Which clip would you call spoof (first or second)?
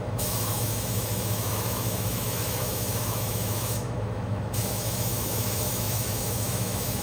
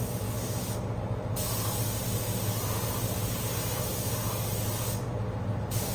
first